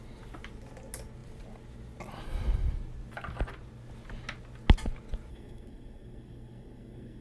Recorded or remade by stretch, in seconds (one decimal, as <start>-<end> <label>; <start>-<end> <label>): 0.0-5.3 recorded; 5.3-7.2 remade